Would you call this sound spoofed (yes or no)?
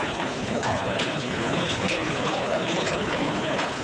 yes